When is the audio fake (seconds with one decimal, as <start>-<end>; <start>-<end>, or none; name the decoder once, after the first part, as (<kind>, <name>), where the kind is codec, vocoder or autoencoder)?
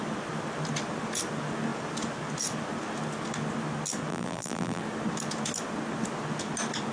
4.1-4.8 (vocoder, BigVGAN v2)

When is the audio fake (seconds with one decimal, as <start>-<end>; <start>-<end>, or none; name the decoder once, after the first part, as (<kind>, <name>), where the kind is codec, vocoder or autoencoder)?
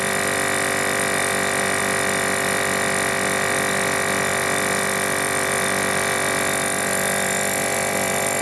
0.0-8.4 (vocoder, BigVGAN v2)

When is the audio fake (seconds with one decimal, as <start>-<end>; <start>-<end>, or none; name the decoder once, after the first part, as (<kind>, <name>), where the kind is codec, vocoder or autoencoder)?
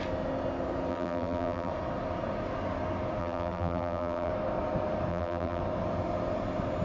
0.9-1.7 (vocoder, BigVGAN v2); 3.2-4.3; 5.1-5.6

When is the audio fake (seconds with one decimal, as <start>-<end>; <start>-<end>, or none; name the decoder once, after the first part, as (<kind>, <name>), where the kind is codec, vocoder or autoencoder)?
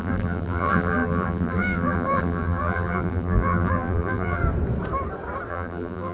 0.0-4.4 (vocoder, BigVGAN v2); 5.5-6.1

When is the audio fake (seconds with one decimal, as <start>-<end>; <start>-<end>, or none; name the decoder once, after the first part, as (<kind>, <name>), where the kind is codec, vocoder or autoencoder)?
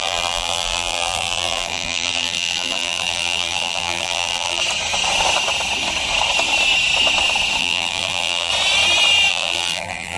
0.0-4.6 (vocoder, BigVGAN v2); 7.6-8.5; 9.3-10.2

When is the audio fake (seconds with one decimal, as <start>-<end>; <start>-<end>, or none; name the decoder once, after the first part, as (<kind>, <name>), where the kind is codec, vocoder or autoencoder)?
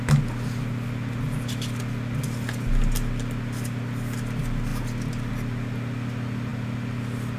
none